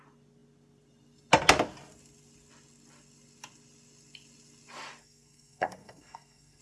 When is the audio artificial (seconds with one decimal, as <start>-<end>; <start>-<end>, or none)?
5.0-6.6